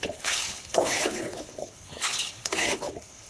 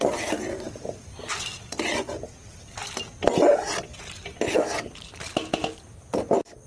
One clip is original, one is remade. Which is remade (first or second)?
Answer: first